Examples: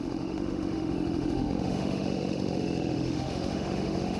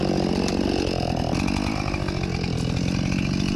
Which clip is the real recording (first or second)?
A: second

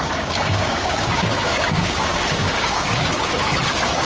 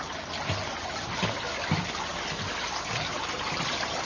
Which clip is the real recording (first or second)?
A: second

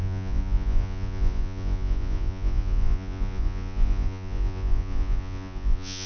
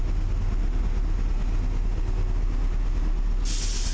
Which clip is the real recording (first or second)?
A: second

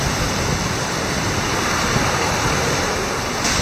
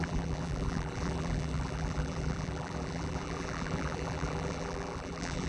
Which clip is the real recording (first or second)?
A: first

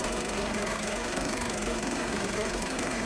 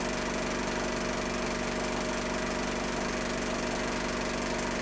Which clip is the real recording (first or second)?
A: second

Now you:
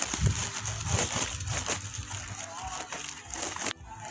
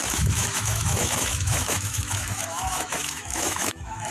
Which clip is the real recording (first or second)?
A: first